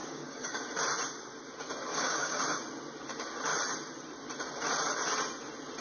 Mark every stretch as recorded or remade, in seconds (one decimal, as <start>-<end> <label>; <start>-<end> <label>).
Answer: 0.0-0.6 remade; 0.6-1.9 recorded; 1.9-2.4 remade; 2.4-5.8 recorded